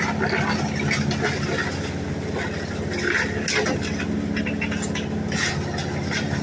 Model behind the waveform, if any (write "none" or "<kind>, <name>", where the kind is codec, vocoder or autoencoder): none